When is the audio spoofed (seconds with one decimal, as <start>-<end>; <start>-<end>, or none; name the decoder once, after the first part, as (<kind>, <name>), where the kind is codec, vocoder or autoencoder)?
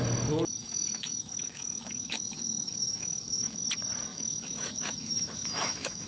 0.6-3.6 (autoencoder, DAC-VAE); 4.1-6.1